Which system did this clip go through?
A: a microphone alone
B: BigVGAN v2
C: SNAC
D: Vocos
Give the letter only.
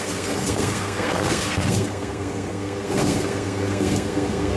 C